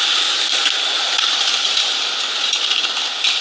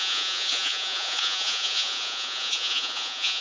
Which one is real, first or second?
first